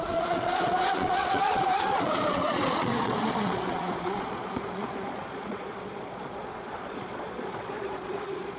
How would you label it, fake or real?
fake